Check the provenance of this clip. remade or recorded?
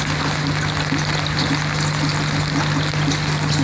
recorded